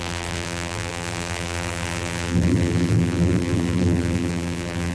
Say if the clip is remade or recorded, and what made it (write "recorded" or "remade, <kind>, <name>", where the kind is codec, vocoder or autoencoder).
remade, vocoder, BigVGAN v2